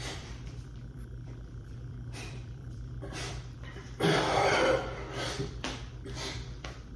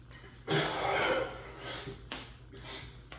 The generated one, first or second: first